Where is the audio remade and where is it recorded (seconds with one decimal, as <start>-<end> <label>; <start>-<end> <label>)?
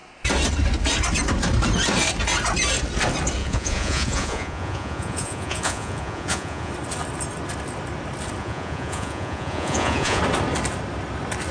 0.0-3.4 recorded; 3.4-6.7 remade; 6.7-8.4 recorded; 8.4-10.2 remade; 10.2-11.5 recorded